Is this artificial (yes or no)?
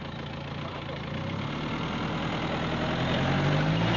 no